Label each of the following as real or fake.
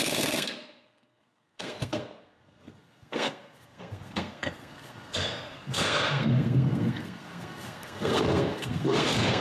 fake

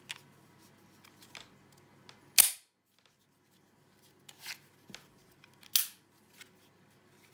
real